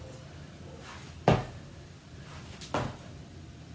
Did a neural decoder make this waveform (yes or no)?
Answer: no